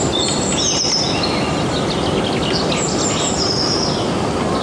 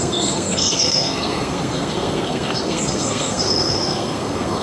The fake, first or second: second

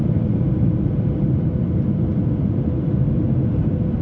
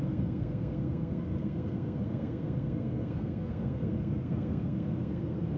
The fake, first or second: second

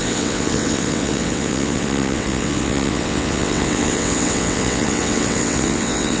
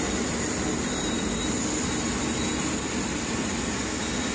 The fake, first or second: first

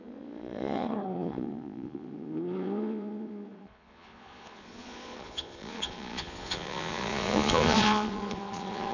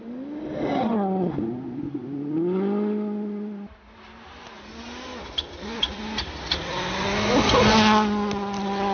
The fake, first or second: first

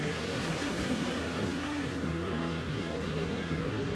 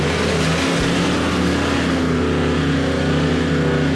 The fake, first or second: first